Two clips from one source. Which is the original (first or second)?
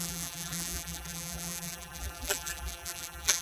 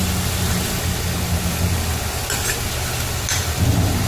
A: second